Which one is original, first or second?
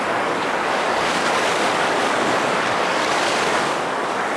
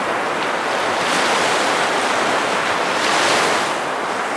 second